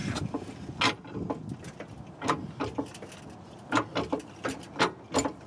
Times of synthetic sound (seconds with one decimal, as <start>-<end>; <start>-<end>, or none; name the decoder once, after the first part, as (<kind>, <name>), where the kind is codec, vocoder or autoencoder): none